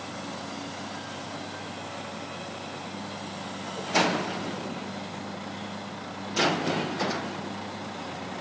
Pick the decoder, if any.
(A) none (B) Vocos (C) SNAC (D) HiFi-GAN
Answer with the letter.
A